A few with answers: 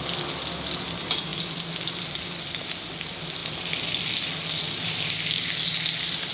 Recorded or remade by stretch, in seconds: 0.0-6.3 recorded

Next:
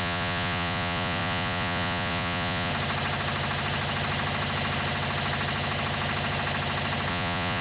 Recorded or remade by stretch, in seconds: 0.0-2.7 remade; 2.7-7.1 recorded; 7.1-7.6 remade

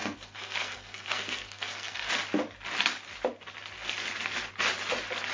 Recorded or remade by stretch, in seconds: 0.0-2.1 remade; 2.1-5.3 recorded

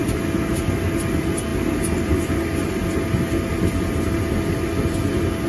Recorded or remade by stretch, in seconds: 0.0-5.5 recorded

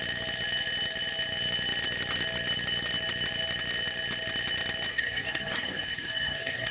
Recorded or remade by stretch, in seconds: 0.0-4.9 recorded; 4.9-6.7 remade

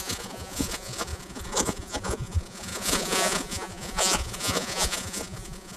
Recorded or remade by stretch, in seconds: 0.0-5.8 remade

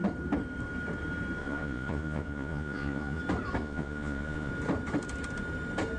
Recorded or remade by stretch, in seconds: 0.0-1.4 recorded; 1.4-3.2 remade; 3.2-3.6 recorded; 3.6-4.5 remade; 4.5-6.0 recorded

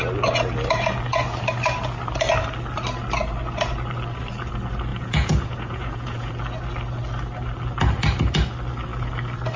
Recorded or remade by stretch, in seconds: 0.0-4.9 recorded; 4.9-6.3 remade; 6.3-9.6 recorded